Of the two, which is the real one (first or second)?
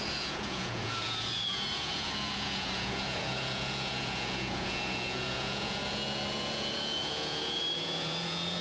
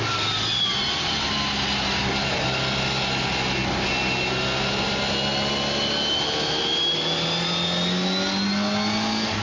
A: second